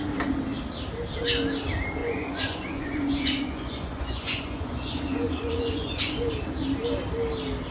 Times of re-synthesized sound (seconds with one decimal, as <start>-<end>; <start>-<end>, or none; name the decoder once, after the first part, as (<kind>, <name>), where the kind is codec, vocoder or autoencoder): 2.0-6.3 (vocoder, Vocos)